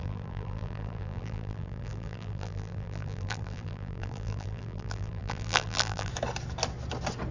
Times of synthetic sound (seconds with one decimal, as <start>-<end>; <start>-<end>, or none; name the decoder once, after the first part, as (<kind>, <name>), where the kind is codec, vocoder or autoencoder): 0.0-6.1 (vocoder, BigVGAN v2)